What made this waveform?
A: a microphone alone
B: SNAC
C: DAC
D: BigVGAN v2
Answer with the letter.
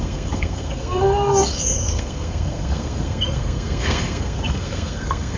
B